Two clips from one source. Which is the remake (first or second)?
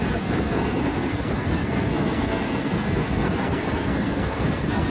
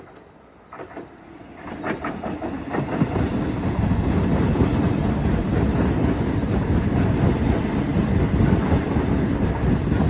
first